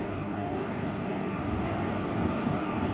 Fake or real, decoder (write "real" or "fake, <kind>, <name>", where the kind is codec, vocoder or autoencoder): fake, codec, DAC